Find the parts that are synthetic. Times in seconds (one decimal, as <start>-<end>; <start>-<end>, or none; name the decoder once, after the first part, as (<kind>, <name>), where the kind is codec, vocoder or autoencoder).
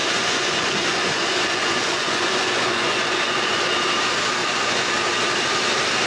0.0-3.7 (vocoder, Vocos); 4.4-4.9